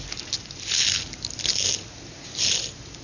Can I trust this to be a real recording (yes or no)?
yes